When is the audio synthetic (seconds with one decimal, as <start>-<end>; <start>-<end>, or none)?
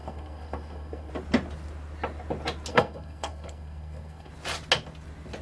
0.0-1.1; 2.7-4.3